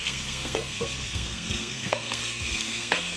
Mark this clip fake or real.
fake